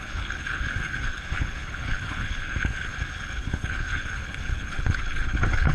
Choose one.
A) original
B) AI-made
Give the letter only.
B